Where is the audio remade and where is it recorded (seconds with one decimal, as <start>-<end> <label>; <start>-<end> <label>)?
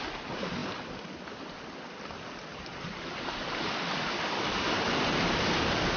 0.0-6.0 recorded